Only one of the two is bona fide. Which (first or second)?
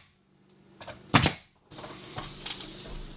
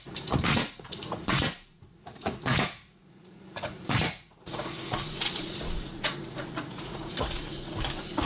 first